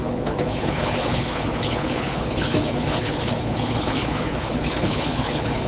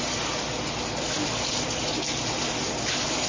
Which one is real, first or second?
second